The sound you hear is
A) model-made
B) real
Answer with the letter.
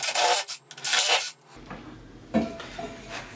B